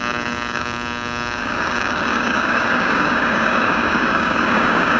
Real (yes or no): no